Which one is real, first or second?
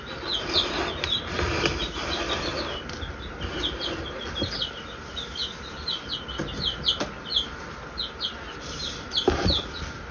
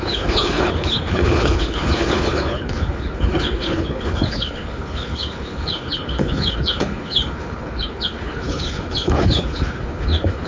first